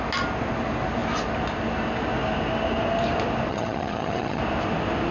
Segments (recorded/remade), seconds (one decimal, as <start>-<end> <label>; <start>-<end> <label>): 0.0-3.5 recorded; 3.5-4.4 remade; 4.4-5.1 recorded